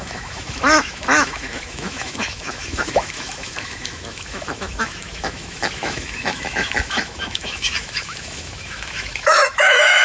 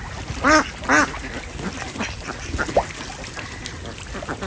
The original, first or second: second